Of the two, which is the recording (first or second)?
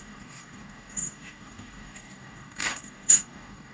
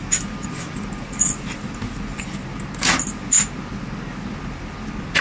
second